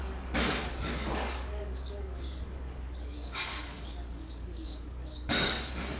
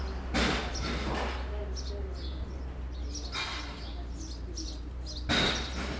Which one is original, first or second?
second